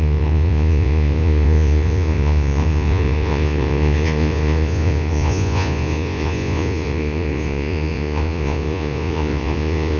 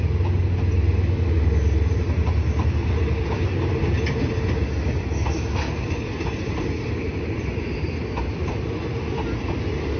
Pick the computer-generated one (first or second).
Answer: first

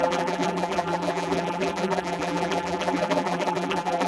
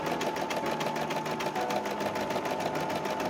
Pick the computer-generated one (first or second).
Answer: first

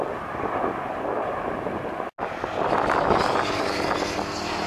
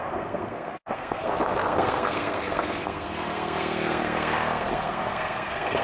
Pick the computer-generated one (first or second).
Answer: second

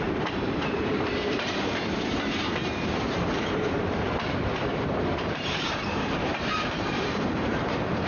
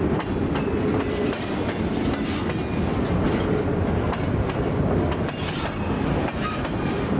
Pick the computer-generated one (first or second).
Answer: first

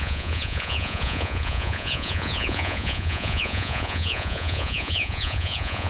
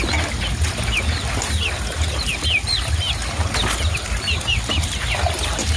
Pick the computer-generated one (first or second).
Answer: first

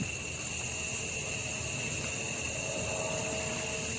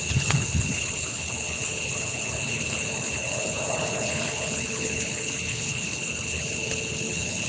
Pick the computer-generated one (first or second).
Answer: second